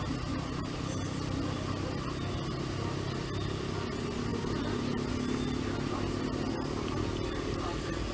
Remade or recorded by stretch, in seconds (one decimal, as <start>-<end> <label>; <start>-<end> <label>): 0.0-8.1 recorded